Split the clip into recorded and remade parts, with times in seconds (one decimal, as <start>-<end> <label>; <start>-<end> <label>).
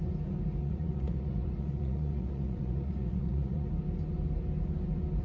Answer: 0.0-0.6 recorded; 0.6-3.7 remade; 3.7-5.2 recorded